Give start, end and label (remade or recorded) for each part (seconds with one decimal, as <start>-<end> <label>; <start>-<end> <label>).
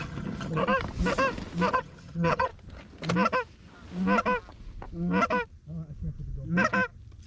0.0-0.6 remade; 0.6-1.7 recorded; 1.7-2.5 remade; 2.5-7.3 recorded